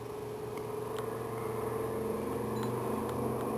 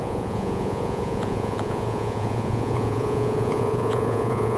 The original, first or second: first